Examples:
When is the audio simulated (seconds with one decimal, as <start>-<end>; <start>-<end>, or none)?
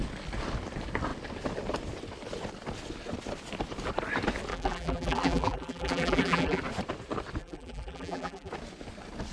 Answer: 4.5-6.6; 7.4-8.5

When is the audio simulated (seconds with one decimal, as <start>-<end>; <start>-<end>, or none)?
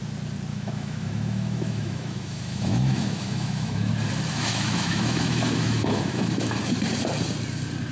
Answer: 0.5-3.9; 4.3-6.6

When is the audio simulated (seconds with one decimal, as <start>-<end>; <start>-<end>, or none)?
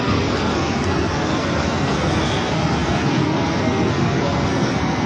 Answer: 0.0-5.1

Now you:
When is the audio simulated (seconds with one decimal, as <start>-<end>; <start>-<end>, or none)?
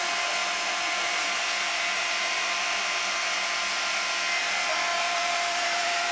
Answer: 0.4-3.5; 4.9-6.1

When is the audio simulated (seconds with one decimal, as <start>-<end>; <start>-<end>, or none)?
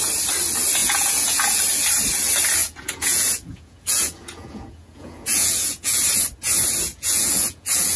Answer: 0.8-1.6; 2.6-6.0; 6.9-8.0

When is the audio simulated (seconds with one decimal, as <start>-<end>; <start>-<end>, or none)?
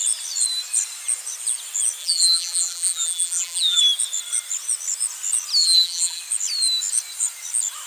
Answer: 2.0-3.8; 5.6-6.2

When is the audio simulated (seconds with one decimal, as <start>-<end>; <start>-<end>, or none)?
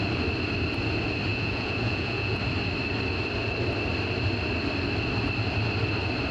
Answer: 1.3-2.4